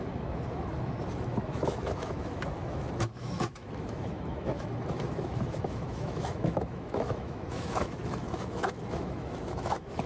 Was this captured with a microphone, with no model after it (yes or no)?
no